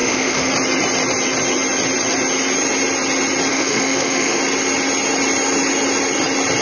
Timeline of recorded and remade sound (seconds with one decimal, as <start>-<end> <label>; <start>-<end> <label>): 0.0-0.5 remade; 0.5-3.5 recorded; 3.5-4.4 remade; 4.4-6.6 recorded